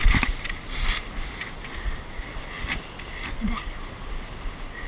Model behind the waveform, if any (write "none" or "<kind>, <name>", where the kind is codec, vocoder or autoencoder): none